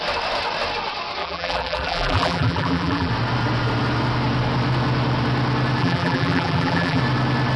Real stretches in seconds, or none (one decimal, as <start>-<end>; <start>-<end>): 0.0-1.2; 3.1-5.8; 7.0-7.6